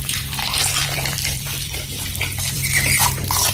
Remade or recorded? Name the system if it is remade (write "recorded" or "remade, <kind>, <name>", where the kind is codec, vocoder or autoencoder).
remade, vocoder, BigVGAN v2